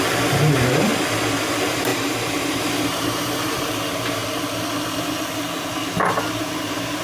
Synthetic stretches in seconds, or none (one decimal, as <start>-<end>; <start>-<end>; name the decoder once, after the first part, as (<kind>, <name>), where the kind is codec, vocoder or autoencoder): 0.0-0.9 (vocoder, BigVGAN v2); 1.5-4.2; 6.4-7.0